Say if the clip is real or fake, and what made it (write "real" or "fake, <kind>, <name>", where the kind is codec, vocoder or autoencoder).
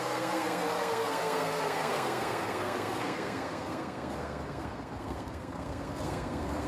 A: fake, codec, SNAC